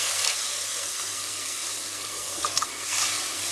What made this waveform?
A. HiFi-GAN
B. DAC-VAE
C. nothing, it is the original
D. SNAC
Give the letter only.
D